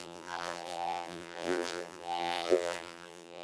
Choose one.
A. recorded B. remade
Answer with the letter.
B